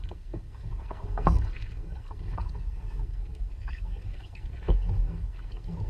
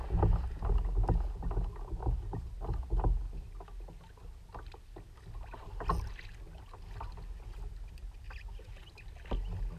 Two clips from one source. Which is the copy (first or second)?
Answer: first